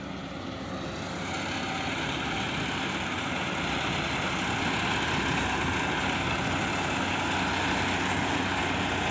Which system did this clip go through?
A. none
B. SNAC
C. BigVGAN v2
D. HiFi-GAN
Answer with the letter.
A